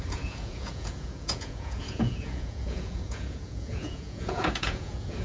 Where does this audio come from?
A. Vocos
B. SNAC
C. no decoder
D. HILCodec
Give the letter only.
A